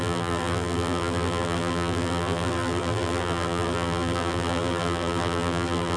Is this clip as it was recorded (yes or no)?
no